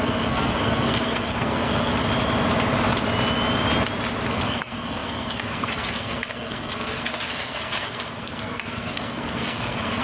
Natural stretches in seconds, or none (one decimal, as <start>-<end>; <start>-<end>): 1.9-4.3

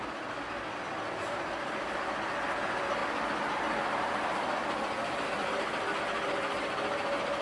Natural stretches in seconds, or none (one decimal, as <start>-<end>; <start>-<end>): 0.0-7.4